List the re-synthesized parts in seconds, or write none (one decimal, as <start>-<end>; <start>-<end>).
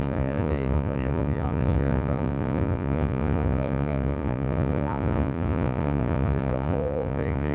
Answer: 0.0-7.5